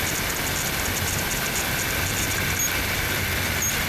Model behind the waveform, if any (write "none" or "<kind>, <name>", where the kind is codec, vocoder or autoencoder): none